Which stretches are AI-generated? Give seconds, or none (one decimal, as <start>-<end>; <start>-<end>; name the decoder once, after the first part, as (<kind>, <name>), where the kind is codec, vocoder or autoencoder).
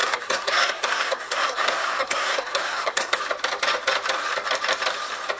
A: 0.0-3.2 (codec, SNAC)